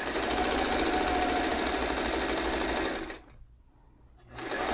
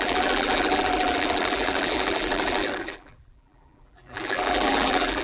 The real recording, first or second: first